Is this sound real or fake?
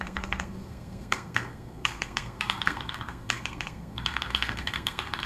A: fake